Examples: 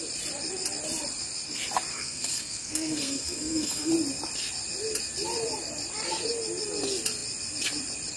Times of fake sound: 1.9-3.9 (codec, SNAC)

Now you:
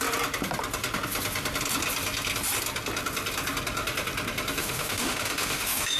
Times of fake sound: 4.6-6.0 (autoencoder, DAC-VAE)